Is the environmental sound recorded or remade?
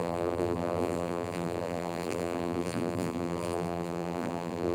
remade